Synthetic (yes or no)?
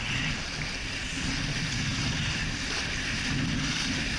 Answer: no